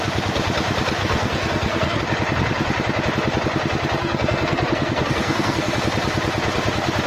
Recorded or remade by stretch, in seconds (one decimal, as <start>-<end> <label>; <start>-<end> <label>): 0.0-1.0 recorded; 1.0-2.0 remade; 2.0-4.0 recorded; 4.0-5.8 remade; 5.8-7.1 recorded